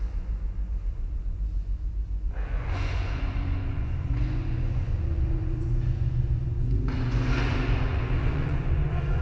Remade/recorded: remade